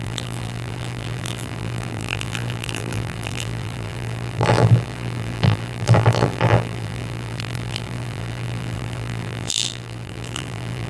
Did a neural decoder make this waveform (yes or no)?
yes